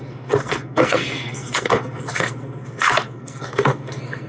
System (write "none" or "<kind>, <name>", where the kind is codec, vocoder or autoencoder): codec, SNAC